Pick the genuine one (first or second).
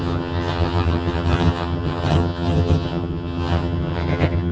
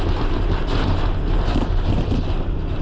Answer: second